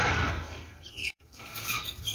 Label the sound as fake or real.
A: fake